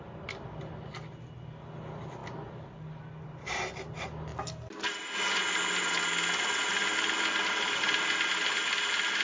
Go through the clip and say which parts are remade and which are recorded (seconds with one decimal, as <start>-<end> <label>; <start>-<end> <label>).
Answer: 0.0-9.2 recorded